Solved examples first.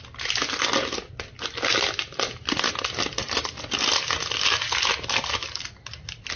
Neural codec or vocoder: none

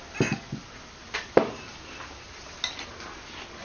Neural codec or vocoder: none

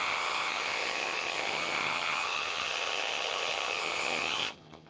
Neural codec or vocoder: vocoder, HiFi-GAN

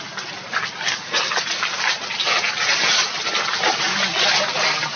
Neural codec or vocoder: none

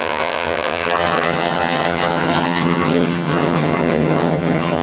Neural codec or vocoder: vocoder, HiFi-GAN